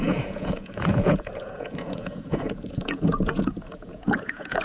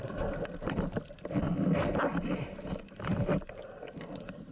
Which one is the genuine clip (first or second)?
second